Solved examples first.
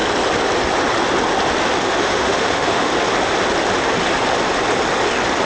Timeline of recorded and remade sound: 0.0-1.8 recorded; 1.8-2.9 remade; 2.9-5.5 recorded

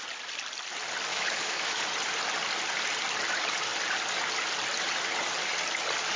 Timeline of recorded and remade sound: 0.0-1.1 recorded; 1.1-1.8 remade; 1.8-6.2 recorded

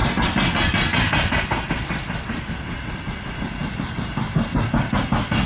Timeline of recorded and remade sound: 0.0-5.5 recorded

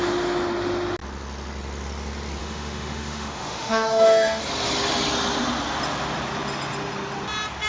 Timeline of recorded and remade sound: 0.0-2.4 recorded; 2.4-4.4 remade; 4.4-7.7 recorded

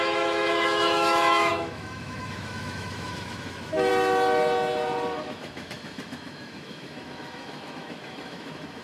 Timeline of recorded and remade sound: 0.0-3.9 remade; 3.9-5.2 recorded; 5.2-8.8 remade